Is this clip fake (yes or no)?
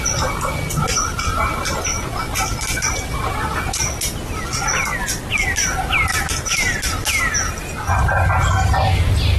no